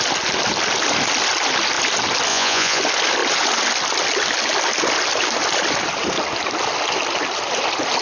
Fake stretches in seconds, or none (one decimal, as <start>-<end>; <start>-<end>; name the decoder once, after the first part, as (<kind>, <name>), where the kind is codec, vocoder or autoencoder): 2.3-2.8 (vocoder, Vocos)